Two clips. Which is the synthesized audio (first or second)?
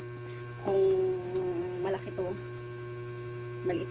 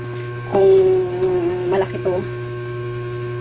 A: second